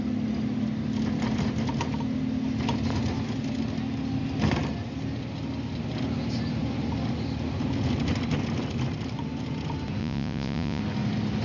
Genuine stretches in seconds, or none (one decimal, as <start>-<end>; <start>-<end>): 0.0-10.0; 10.8-11.4